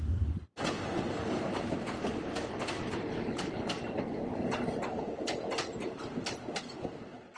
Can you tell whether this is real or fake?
real